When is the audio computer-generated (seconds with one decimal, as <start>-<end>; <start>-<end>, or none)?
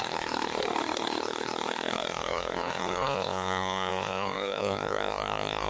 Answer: 0.0-5.7